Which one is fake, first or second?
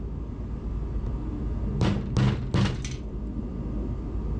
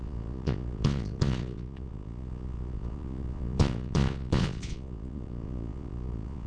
second